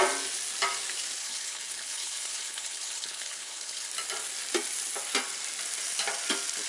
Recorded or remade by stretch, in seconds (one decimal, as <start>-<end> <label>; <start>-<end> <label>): 0.0-1.2 recorded; 1.2-3.9 remade; 3.9-6.7 recorded